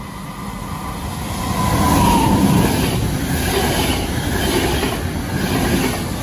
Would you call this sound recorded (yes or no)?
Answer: yes